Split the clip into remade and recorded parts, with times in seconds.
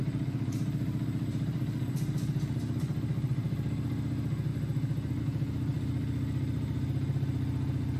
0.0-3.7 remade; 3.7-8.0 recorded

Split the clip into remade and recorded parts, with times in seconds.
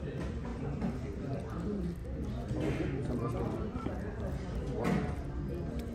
0.0-5.9 recorded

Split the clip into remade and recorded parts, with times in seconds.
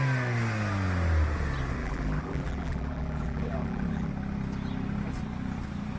0.0-1.8 recorded; 1.8-4.1 remade; 4.1-6.0 recorded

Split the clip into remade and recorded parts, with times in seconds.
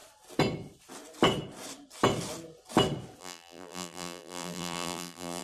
0.0-3.2 recorded; 3.2-5.4 remade